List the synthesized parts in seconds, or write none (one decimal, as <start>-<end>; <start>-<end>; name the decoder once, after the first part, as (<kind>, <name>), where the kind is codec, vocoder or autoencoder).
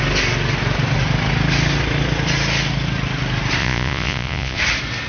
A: 3.6-4.6 (vocoder, Vocos)